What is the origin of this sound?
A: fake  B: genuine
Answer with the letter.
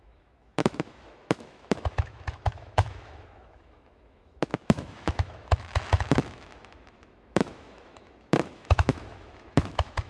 A